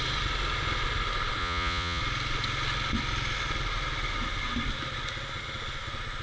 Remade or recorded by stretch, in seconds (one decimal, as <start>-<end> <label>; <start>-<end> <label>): 0.0-1.4 recorded; 1.4-2.0 remade; 2.0-6.2 recorded

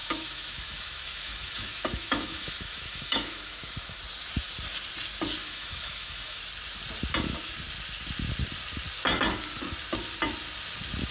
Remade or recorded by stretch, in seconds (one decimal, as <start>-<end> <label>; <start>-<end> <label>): 0.0-4.0 remade; 4.0-5.4 recorded; 5.4-6.4 remade; 6.4-11.1 recorded